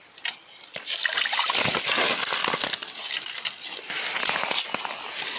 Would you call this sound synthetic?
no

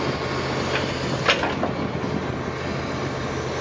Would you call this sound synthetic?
no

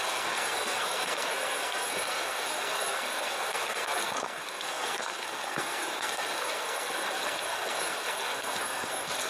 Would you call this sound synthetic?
yes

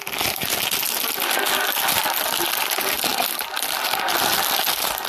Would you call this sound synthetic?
no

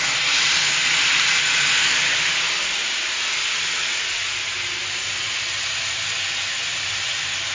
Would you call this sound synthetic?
no